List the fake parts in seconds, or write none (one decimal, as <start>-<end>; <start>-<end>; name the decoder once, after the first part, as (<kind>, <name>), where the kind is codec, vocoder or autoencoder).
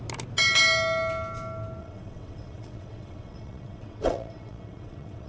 1.8-5.3 (vocoder, WaveNeXt)